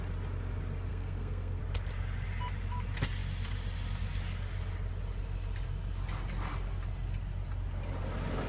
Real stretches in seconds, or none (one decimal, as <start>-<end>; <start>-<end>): 0.0-0.9; 1.6-8.5